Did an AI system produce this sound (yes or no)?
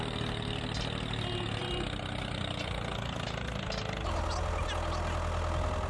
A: no